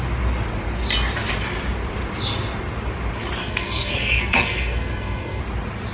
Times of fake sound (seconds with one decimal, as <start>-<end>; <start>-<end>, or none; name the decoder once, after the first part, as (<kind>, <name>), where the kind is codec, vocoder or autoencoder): 3.4-5.4 (codec, SNAC)